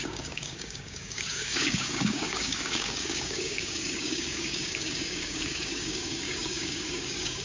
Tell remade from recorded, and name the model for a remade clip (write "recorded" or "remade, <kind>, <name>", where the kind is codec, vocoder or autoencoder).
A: remade, codec, DAC